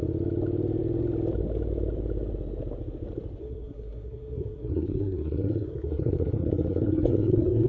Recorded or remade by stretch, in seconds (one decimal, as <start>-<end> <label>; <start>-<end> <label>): 0.0-3.4 recorded; 3.4-7.7 remade

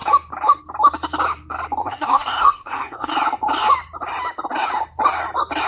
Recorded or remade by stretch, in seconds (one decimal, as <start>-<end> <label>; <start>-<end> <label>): 0.0-1.8 recorded; 1.8-3.1 remade; 3.1-5.7 recorded